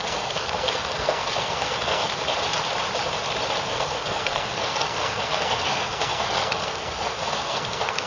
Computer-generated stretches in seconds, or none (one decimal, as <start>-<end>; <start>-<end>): 0.0-2.1; 3.7-8.1